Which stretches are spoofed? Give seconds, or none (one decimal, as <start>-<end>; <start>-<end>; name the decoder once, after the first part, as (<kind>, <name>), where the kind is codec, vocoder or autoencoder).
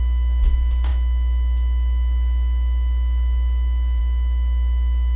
none